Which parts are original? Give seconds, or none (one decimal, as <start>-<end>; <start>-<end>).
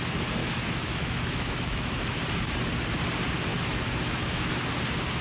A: 0.0-0.4; 2.0-3.5; 4.5-5.2